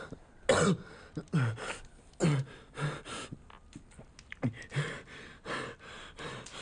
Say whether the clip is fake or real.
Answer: real